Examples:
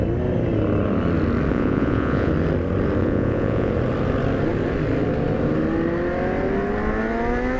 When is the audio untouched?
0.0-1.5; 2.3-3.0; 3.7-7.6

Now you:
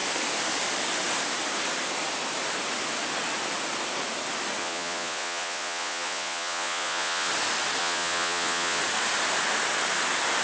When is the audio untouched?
0.0-4.6; 7.3-7.8; 8.8-10.4

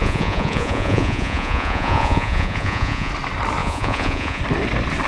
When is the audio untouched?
3.1-3.6; 4.4-5.1

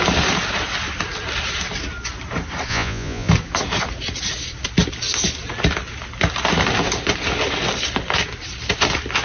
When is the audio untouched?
0.0-2.7; 3.3-9.2